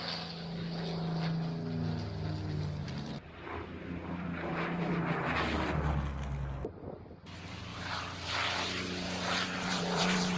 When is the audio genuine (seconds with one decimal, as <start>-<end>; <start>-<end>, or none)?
0.0-2.8; 4.9-7.7